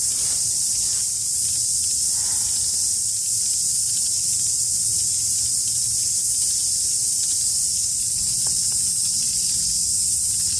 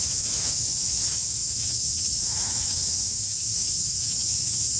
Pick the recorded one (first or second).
first